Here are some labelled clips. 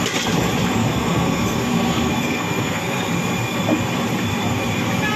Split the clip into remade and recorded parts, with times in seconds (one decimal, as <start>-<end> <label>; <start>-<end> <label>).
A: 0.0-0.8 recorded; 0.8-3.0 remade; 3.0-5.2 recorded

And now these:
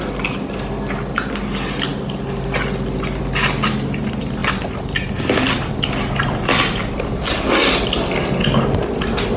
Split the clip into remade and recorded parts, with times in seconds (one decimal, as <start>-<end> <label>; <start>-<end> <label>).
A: 0.0-9.4 recorded

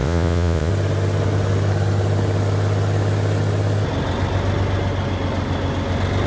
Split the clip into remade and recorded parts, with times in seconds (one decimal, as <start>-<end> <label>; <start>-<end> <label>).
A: 0.0-0.7 remade; 0.7-6.3 recorded

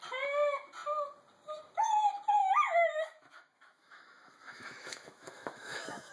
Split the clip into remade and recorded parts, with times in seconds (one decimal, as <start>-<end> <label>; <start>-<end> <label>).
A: 0.0-2.4 recorded; 2.4-6.1 remade

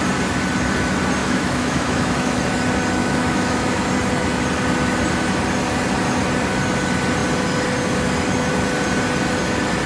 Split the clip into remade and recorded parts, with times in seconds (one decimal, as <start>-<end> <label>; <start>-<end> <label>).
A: 0.0-1.2 recorded; 1.2-2.4 remade; 2.4-3.0 recorded; 3.0-3.8 remade; 3.8-9.9 recorded